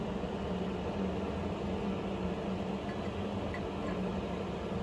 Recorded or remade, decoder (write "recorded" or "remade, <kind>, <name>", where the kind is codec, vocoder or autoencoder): recorded